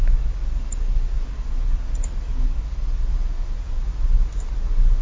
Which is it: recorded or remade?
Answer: recorded